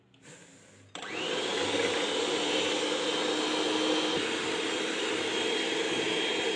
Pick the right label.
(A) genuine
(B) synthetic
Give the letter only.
A